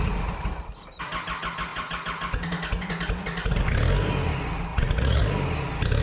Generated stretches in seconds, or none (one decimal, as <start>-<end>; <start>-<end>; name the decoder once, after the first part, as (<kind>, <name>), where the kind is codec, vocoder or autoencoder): 4.7-5.2 (vocoder, Vocos)